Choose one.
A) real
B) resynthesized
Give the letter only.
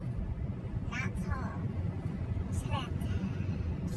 B